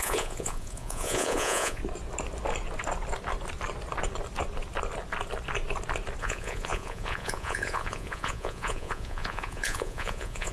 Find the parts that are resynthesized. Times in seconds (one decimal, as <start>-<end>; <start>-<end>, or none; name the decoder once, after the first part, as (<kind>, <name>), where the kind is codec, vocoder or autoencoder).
0.0-1.8 (vocoder, Vocos); 6.2-10.5